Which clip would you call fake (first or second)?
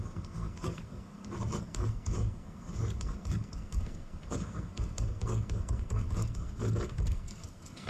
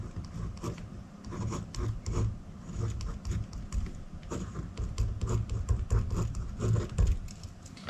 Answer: first